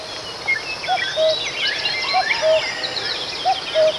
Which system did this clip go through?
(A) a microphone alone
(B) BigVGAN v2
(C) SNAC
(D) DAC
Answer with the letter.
A